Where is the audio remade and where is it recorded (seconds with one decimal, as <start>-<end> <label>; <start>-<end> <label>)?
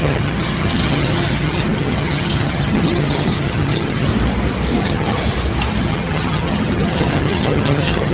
0.0-4.1 remade; 4.1-4.8 recorded; 4.8-5.2 remade; 5.2-5.8 recorded; 5.8-8.1 remade